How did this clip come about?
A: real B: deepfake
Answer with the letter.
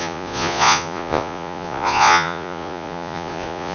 B